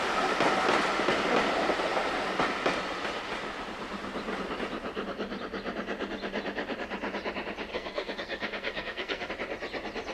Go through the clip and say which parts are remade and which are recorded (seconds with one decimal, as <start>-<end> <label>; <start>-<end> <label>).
0.0-7.7 recorded; 7.7-9.3 remade; 9.3-10.1 recorded